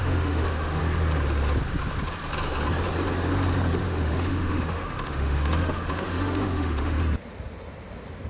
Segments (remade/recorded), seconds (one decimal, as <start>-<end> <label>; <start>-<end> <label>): 0.0-0.8 remade; 0.8-3.8 recorded; 3.8-7.0 remade; 7.0-8.3 recorded